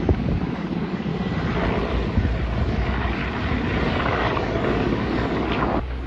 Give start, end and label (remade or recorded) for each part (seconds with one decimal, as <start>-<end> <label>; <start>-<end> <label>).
0.0-1.1 remade; 1.1-2.6 recorded; 2.6-3.2 remade; 3.2-3.9 recorded; 3.9-6.1 remade